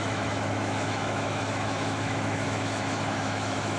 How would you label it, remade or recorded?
remade